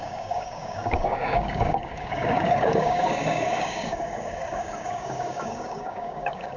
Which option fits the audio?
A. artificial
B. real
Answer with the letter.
A